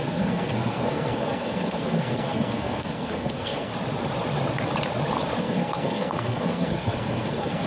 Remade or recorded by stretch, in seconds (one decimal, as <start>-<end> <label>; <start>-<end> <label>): 0.0-3.7 remade; 3.7-5.4 recorded; 5.4-7.7 remade